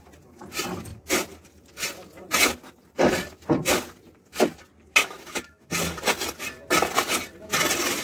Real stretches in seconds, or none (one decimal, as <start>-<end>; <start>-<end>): 0.0-5.0; 5.7-8.0